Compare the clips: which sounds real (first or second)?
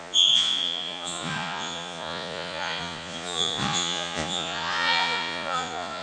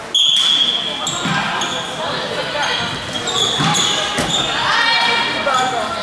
second